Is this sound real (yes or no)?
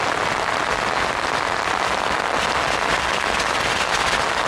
yes